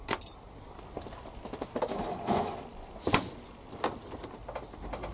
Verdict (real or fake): real